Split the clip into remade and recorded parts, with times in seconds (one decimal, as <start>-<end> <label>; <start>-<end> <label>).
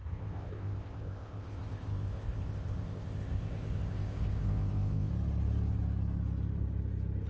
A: 0.0-5.1 remade; 5.1-7.3 recorded